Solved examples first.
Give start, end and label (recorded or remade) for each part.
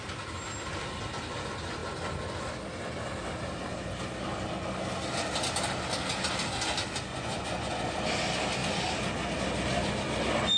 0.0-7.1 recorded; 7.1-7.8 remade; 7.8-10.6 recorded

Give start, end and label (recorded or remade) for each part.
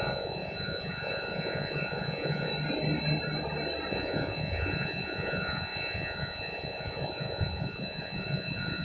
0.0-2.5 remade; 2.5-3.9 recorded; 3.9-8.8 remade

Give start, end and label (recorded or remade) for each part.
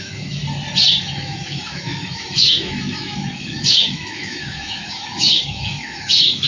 0.0-0.4 remade; 0.4-1.0 recorded; 1.0-6.5 remade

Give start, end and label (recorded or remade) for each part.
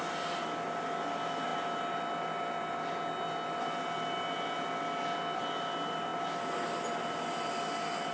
0.0-8.1 recorded